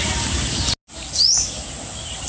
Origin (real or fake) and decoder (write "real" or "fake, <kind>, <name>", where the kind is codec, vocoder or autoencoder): real